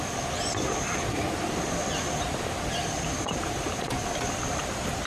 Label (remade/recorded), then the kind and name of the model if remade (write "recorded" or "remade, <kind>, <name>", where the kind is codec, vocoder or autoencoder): recorded